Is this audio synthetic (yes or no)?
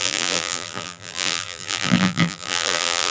yes